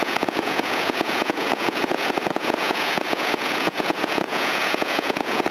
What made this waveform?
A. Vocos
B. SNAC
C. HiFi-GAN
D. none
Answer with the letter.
A